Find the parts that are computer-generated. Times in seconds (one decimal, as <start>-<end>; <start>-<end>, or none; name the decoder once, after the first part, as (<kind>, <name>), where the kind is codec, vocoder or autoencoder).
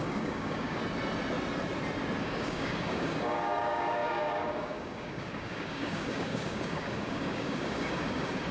0.0-0.8 (codec, DAC); 2.2-8.5